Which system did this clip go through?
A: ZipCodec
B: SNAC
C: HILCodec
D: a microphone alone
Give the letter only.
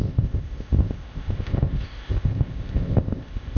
A